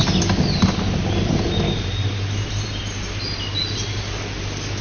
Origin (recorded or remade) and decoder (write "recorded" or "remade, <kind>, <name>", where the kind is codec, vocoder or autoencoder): recorded